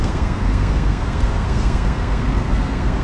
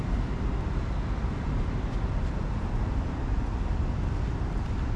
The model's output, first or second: first